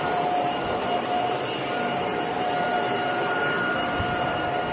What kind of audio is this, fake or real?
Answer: fake